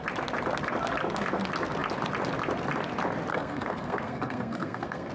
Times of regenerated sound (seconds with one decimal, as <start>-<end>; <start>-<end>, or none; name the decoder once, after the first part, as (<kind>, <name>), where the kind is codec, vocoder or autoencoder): 3.3-5.1 (codec, SNAC)